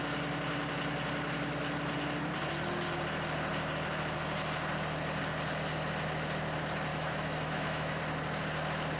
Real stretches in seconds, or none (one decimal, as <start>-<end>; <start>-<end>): 0.0-6.9; 8.0-9.0